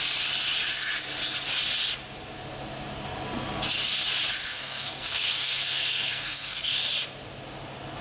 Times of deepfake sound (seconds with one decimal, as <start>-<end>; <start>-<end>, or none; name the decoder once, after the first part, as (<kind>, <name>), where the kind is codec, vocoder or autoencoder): 4.5-6.7 (codec, SNAC)